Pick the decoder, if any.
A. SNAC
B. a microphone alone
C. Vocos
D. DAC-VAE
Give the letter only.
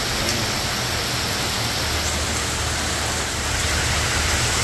B